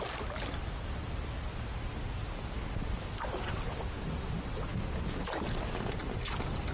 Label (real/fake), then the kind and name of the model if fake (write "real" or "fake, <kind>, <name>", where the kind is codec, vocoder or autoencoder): real